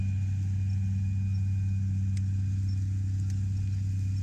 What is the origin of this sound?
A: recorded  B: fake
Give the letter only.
A